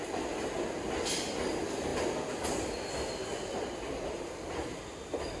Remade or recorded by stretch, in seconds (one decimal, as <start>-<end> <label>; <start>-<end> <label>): 0.0-5.4 recorded